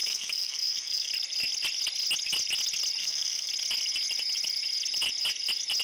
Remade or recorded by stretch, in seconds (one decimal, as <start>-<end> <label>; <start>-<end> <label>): 0.0-1.1 remade; 1.1-3.0 recorded; 3.0-3.5 remade; 3.5-5.8 recorded